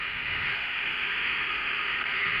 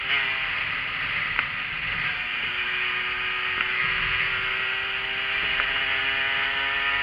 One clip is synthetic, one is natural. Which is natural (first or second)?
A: second